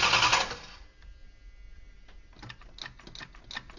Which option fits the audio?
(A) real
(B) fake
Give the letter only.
A